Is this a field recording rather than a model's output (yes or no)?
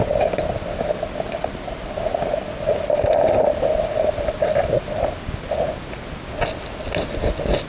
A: yes